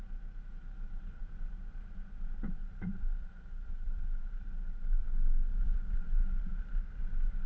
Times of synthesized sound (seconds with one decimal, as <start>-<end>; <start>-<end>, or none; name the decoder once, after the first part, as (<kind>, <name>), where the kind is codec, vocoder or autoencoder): 0.5-1.2 (vocoder, BigVGAN v2); 2.6-5.0; 5.5-6.8